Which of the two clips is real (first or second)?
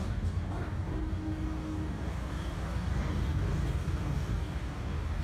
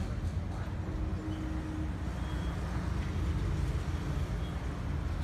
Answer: second